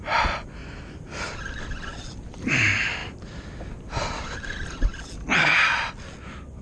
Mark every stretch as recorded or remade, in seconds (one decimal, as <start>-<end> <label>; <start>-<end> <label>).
0.0-0.6 recorded; 0.6-1.4 remade; 1.4-6.6 recorded